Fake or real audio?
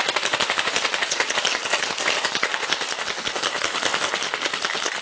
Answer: real